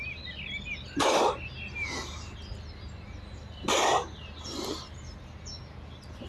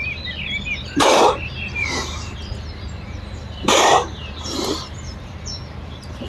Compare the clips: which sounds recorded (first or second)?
first